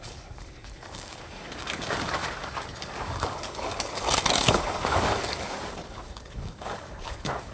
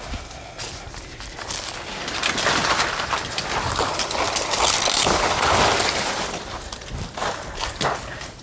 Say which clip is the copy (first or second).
first